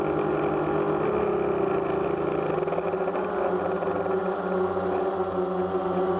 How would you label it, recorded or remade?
recorded